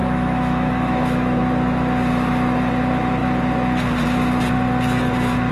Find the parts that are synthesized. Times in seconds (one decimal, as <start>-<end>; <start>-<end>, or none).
0.0-1.4